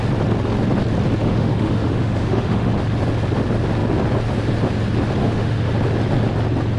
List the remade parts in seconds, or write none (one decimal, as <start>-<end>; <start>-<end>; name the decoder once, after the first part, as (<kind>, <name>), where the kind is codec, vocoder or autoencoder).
1.2-2.7 (autoencoder, DAC-VAE); 5.2-5.7